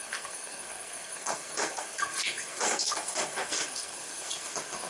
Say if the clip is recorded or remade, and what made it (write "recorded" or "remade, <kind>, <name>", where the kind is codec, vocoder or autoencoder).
remade, codec, SNAC